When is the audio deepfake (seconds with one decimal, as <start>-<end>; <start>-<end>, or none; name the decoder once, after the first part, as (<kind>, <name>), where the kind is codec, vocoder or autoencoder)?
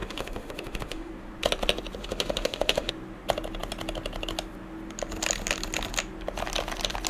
0.0-1.1 (autoencoder, DAC-VAE); 2.0-2.9